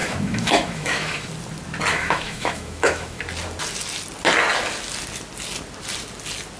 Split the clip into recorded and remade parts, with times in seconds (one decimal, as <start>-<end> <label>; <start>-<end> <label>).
0.0-1.3 remade; 1.3-1.9 recorded; 1.9-3.2 remade; 3.2-6.6 recorded